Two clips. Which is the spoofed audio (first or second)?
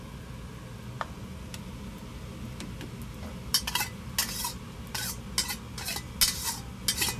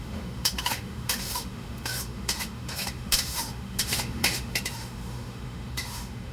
second